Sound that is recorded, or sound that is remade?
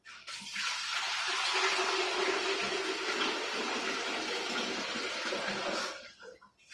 recorded